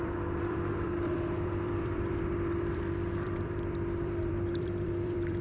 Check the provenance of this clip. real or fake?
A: fake